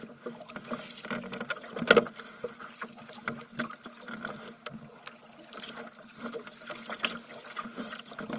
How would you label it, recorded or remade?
recorded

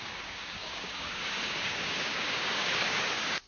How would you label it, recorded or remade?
remade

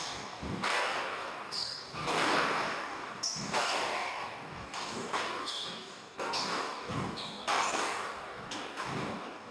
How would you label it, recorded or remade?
remade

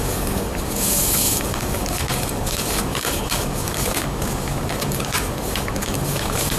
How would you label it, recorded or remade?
remade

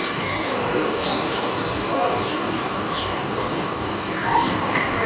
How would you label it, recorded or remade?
remade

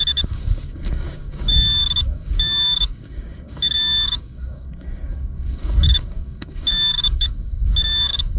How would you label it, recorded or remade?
remade